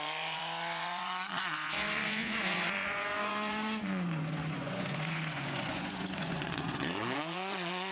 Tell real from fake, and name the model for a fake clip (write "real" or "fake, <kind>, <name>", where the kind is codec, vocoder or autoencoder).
fake, vocoder, Vocos